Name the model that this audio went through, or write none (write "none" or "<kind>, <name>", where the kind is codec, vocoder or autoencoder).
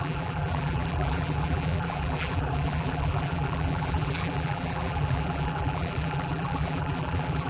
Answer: vocoder, BigVGAN v2